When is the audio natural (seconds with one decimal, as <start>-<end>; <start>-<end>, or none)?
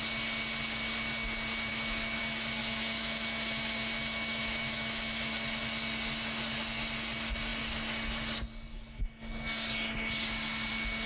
0.0-1.7; 2.2-2.6; 5.3-11.1